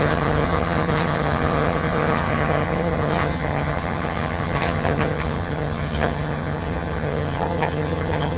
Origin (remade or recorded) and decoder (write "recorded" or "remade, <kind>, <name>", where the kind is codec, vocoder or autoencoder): remade, vocoder, HiFi-GAN